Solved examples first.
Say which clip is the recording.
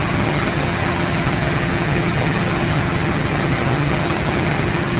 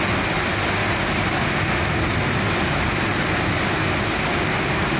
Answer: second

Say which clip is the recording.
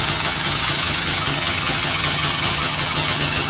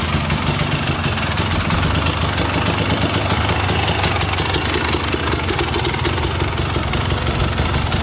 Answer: second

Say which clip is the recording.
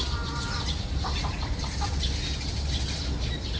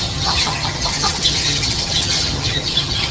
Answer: first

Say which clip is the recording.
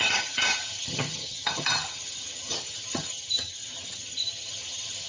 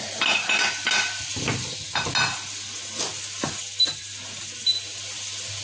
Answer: second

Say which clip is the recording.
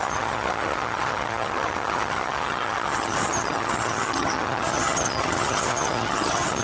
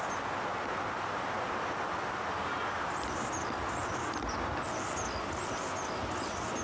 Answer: second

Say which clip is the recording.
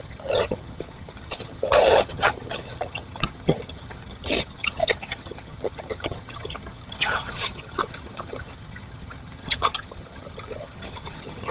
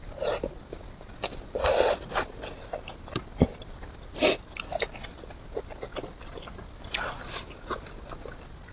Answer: second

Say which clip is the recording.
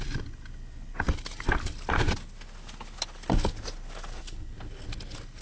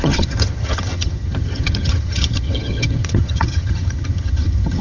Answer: first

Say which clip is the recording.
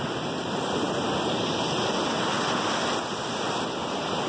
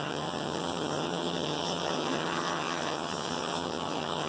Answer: first